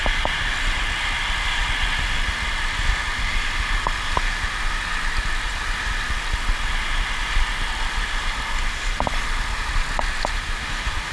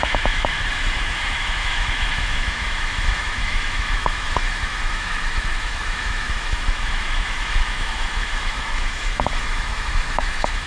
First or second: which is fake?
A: second